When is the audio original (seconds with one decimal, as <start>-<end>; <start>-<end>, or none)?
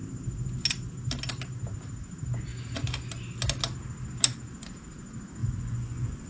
0.0-5.4